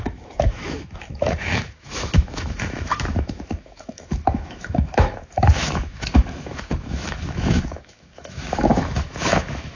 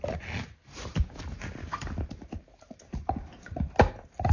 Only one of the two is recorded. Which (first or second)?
second